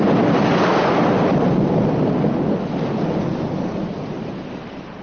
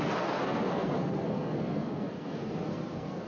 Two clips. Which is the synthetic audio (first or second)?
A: second